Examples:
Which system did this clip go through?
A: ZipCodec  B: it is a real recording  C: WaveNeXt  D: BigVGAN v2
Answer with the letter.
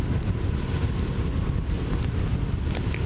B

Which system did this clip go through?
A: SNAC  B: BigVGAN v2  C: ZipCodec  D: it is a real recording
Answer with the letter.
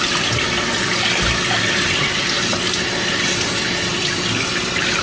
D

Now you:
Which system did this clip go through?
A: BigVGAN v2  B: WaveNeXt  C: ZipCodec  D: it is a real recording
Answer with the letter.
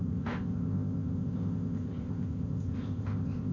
C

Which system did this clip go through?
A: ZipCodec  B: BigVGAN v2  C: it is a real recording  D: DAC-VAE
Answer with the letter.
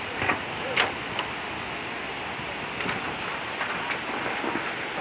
C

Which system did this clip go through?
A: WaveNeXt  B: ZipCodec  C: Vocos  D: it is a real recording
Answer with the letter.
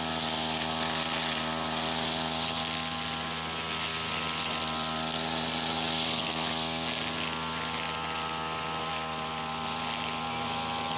D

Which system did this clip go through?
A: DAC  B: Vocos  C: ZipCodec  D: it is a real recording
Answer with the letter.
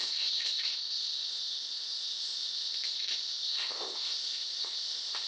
C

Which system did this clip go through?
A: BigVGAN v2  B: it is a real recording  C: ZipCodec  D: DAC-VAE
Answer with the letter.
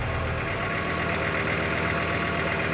B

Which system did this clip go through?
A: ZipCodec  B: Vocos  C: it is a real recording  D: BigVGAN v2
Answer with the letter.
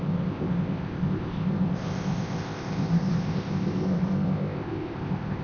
A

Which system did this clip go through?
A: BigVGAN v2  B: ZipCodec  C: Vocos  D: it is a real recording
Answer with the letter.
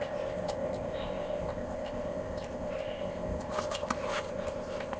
B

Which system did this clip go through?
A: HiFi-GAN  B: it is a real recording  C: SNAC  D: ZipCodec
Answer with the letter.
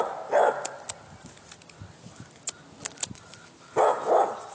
B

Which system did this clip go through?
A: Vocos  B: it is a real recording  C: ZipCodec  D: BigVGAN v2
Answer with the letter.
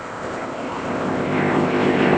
C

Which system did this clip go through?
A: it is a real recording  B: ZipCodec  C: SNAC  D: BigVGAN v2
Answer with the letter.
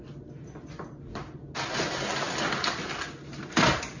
A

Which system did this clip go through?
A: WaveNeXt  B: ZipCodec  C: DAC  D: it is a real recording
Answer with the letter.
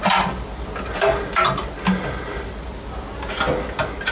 D